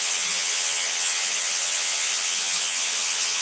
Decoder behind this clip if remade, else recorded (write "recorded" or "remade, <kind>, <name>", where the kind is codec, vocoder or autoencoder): remade, vocoder, HiFi-GAN